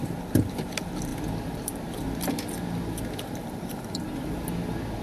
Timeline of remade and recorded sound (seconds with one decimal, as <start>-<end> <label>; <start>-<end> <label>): 0.0-5.0 recorded